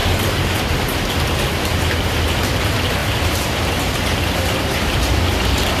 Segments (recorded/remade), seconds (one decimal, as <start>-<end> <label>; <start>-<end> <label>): 0.0-0.6 remade; 0.6-3.0 recorded; 3.0-5.8 remade